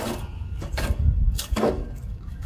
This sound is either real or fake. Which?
fake